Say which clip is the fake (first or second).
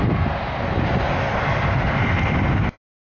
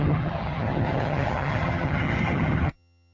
second